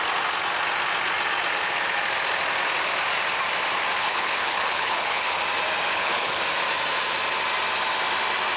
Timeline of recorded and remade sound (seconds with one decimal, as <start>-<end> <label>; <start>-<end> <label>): 0.0-4.0 recorded; 4.0-5.4 remade; 5.4-5.9 recorded; 5.9-6.4 remade; 6.4-8.6 recorded